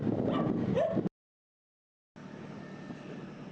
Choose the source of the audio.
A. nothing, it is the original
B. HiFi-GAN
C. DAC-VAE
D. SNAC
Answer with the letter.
A